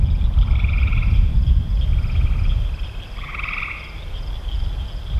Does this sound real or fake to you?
real